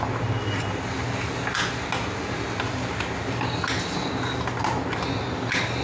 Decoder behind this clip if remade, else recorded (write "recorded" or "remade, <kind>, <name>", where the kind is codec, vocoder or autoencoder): recorded